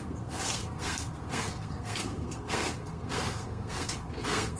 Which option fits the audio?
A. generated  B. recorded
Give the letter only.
A